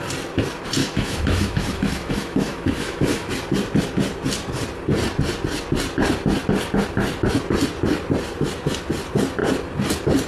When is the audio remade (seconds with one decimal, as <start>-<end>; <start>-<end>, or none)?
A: 0.8-3.3